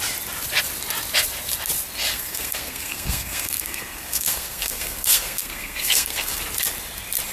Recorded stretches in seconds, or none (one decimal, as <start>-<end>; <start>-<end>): 0.0-2.1; 6.4-7.3